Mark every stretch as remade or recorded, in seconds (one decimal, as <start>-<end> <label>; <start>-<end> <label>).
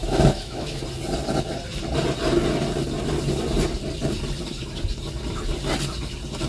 0.0-0.8 remade; 0.8-6.5 recorded